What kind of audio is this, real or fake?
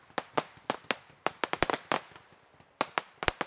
real